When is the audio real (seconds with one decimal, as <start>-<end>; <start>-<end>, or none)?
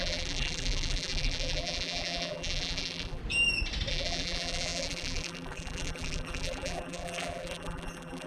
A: 3.2-3.9